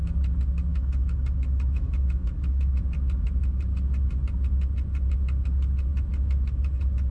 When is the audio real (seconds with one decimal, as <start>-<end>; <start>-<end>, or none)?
0.0-0.7; 2.8-7.1